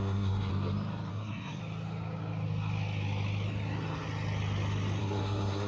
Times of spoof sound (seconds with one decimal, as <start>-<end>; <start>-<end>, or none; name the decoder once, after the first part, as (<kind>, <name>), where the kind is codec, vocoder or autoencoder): 0.0-0.5 (codec, SNAC); 1.1-1.6; 5.0-5.7

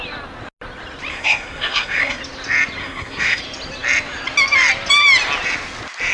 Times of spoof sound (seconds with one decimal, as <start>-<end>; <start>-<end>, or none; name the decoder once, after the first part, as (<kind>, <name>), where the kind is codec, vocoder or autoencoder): 1.1-2.2 (codec, SNAC); 2.8-3.4

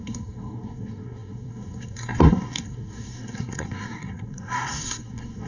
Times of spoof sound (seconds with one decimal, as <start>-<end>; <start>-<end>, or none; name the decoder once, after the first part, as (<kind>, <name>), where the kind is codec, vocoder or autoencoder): 0.0-5.5 (codec, SNAC)